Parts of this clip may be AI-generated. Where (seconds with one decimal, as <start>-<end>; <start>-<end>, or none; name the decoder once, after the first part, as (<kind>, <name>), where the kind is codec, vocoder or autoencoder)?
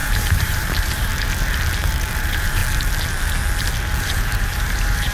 0.0-1.1 (vocoder, BigVGAN v2); 2.2-2.6; 4.0-5.1